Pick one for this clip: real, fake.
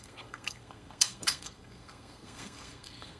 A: fake